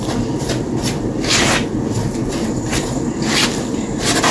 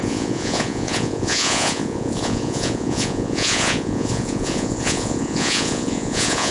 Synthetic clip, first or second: second